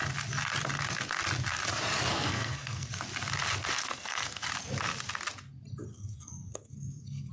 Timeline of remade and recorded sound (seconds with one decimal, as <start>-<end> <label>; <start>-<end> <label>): 0.0-2.1 recorded; 2.1-2.9 remade; 2.9-3.8 recorded; 3.8-4.5 remade; 4.5-5.9 recorded; 5.9-7.3 remade

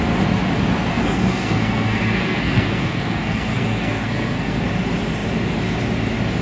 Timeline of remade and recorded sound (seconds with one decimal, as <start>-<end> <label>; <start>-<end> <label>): 0.0-0.9 recorded; 0.9-4.7 remade; 4.7-6.4 recorded

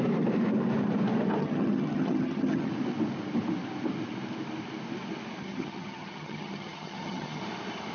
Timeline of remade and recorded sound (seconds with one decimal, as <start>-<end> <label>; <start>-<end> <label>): 0.0-1.4 recorded; 1.4-2.7 remade; 2.7-5.4 recorded; 5.4-7.4 remade; 7.4-7.9 recorded

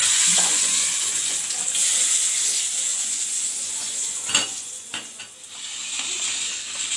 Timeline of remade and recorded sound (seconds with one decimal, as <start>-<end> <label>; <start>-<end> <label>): 0.0-1.4 remade; 1.4-2.9 recorded; 2.9-5.2 remade; 5.2-7.0 recorded

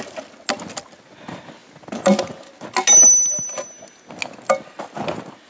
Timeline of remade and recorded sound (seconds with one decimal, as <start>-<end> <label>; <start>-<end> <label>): 0.0-5.5 recorded

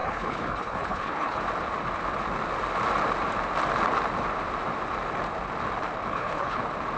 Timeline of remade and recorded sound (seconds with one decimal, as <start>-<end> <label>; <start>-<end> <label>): 0.0-1.4 remade; 1.4-6.1 recorded; 6.1-6.6 remade; 6.6-7.0 recorded